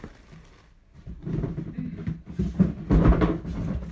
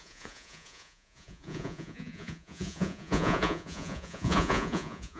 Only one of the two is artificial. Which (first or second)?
second